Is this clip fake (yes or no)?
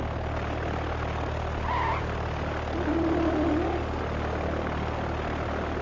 no